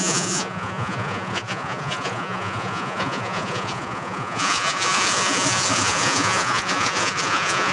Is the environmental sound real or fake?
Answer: fake